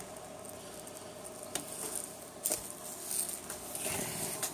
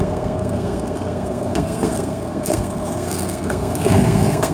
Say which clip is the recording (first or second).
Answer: first